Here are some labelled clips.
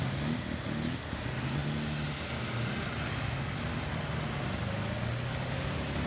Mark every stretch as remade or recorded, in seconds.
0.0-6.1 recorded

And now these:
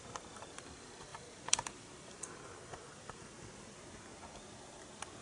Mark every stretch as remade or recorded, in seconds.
0.0-1.1 recorded; 1.1-3.3 remade; 3.3-4.1 recorded; 4.1-5.2 remade

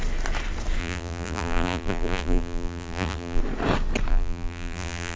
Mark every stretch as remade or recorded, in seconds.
0.0-0.8 recorded; 0.8-3.4 remade; 3.4-4.1 recorded; 4.1-5.2 remade

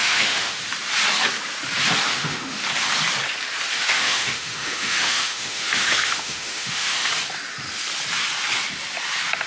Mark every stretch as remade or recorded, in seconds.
0.0-0.6 remade; 0.6-2.1 recorded; 2.1-2.6 remade; 2.6-3.7 recorded; 3.7-7.1 remade; 7.1-9.5 recorded

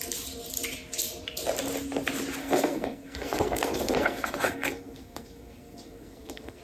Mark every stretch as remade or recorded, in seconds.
0.0-2.4 recorded; 2.4-6.6 remade